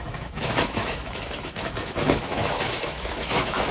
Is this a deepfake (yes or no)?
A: yes